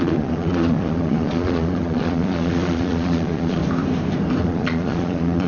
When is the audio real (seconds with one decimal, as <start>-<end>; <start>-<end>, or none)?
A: 3.6-4.4